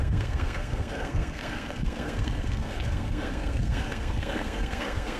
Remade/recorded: remade